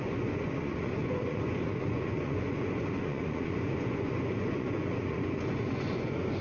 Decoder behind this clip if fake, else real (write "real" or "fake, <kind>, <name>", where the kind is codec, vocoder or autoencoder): fake, vocoder, Vocos